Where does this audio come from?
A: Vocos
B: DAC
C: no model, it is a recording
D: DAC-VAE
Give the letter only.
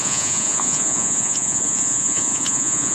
A